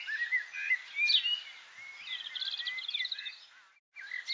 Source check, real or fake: real